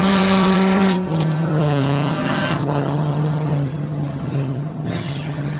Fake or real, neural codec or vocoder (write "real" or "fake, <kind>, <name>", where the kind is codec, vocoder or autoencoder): fake, vocoder, HiFi-GAN